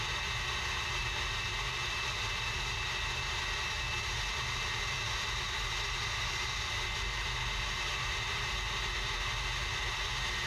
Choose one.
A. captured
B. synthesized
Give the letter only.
A